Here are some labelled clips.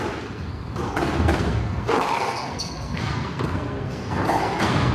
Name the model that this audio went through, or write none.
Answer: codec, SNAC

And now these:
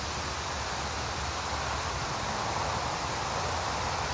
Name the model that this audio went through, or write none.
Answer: none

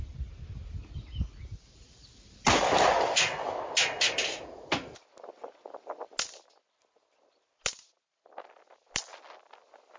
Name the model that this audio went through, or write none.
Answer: none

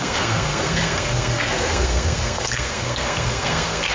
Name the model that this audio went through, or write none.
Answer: codec, SNAC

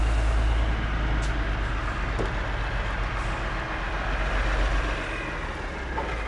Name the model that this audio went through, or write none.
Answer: none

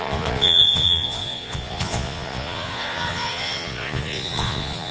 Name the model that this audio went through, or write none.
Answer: vocoder, Vocos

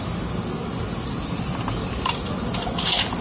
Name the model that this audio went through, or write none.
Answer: none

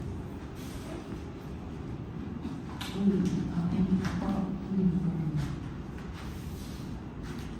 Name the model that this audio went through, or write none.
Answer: none